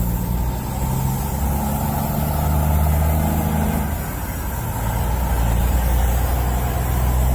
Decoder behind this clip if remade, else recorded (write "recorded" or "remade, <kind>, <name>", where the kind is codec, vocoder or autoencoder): recorded